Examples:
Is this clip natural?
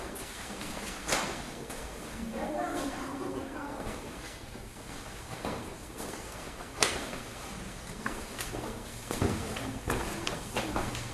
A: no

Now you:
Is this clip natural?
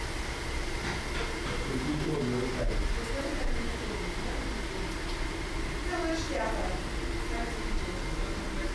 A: yes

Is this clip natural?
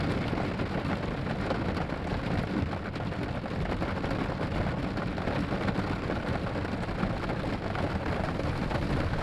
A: yes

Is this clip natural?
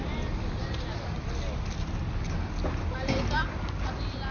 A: yes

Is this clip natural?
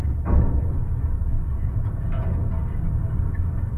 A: yes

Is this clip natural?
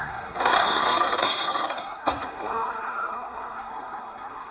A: no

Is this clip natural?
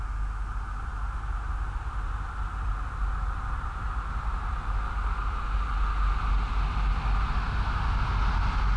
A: yes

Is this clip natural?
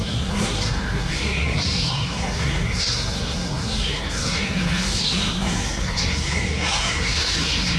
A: no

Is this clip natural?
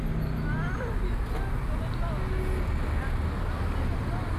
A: yes